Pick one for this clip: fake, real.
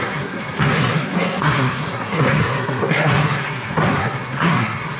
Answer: fake